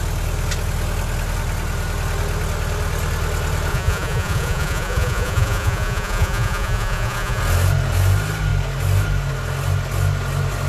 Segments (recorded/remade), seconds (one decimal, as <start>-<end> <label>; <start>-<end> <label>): 0.0-3.7 recorded; 3.7-7.4 remade; 7.4-10.7 recorded